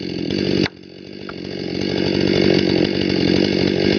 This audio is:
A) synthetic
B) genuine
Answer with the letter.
B